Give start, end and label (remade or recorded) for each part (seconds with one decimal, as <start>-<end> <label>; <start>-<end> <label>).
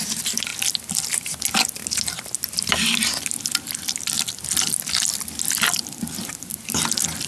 0.0-7.3 recorded